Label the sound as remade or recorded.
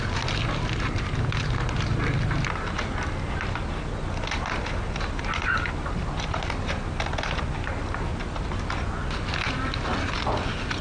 recorded